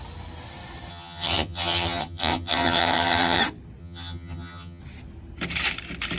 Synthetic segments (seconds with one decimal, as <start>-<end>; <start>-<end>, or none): 0.9-3.4; 3.8-4.8